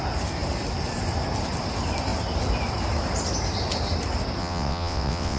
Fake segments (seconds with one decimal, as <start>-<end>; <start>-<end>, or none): 4.4-5.4